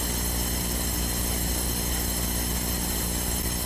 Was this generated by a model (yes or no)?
no